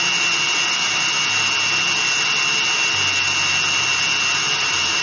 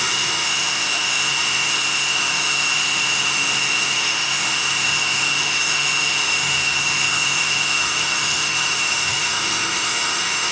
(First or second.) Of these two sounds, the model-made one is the second